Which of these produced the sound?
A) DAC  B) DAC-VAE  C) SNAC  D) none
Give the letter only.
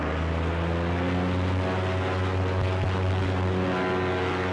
D